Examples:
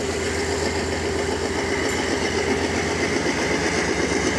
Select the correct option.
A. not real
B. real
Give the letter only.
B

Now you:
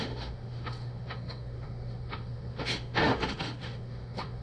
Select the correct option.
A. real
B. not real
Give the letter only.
B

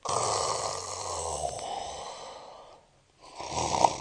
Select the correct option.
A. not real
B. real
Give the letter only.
B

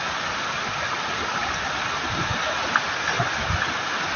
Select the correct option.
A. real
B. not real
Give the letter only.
A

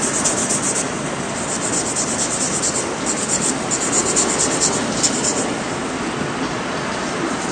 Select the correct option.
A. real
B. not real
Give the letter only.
A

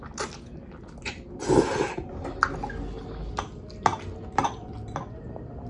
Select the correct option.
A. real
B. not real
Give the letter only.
A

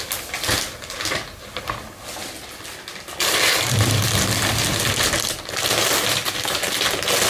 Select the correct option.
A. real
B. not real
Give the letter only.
A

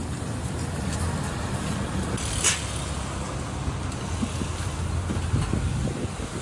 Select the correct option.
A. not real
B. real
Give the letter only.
B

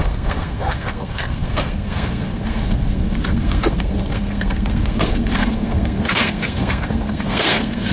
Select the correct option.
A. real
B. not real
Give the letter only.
B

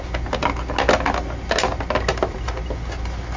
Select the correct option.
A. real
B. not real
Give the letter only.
A